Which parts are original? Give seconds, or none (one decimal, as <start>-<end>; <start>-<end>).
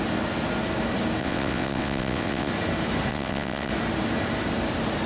0.0-1.2; 2.5-3.1; 3.7-5.1